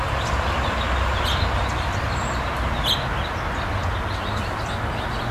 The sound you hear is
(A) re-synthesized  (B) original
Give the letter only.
B